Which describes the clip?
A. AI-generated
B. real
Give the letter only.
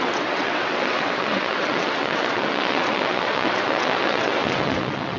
A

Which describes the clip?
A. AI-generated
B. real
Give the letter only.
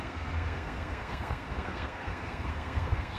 A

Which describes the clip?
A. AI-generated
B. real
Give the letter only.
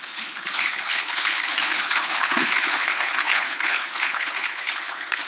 A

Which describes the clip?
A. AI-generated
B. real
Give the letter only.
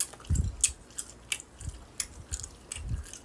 B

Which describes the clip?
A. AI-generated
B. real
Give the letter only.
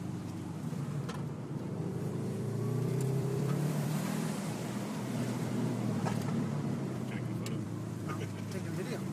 A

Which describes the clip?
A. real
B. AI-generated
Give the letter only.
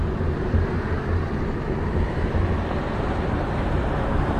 A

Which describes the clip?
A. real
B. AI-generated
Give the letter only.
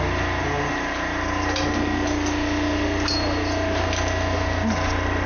A